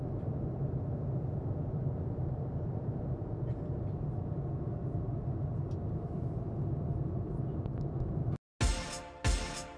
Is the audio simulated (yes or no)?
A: no